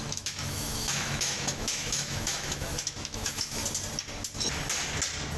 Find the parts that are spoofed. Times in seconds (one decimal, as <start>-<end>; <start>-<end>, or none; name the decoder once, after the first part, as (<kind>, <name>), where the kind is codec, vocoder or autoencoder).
0.0-3.6 (autoencoder, DAC-VAE)